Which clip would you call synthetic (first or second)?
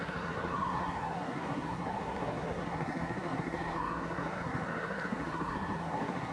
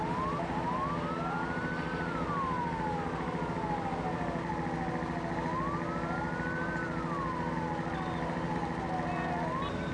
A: first